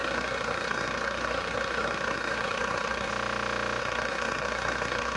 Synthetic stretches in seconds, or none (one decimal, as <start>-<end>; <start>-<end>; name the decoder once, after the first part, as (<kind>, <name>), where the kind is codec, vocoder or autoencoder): 0.0-3.1 (codec, SNAC); 3.8-5.2